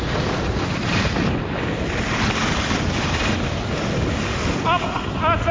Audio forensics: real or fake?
real